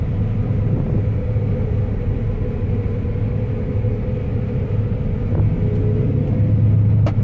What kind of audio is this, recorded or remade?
recorded